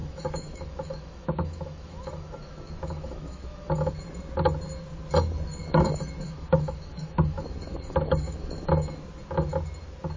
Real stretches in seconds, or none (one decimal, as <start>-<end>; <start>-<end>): 3.9-5.6; 8.7-10.2